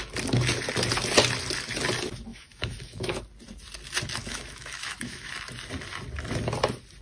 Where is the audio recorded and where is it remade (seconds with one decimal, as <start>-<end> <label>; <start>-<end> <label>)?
0.0-2.3 recorded; 2.3-3.2 remade; 3.2-4.2 recorded; 4.2-5.3 remade; 5.3-7.0 recorded